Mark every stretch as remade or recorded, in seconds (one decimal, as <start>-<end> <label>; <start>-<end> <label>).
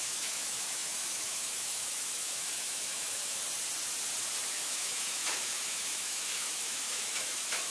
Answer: 0.0-3.4 remade; 3.4-4.5 recorded; 4.5-7.7 remade